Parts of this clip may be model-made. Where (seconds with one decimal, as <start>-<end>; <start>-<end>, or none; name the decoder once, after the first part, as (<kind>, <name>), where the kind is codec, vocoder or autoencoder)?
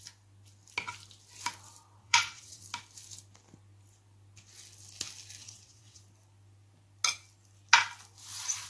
2.0-2.6 (vocoder, WaveNeXt); 5.4-6.0